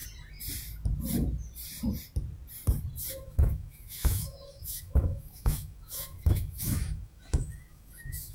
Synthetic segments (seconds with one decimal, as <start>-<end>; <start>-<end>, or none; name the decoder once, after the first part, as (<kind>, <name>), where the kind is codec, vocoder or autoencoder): 3.1-8.3 (autoencoder, DAC-VAE)